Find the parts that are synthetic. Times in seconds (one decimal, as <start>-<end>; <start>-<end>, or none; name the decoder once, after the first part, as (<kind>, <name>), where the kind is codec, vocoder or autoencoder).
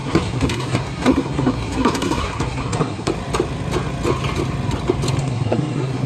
0.0-3.1 (codec, SNAC); 5.2-6.1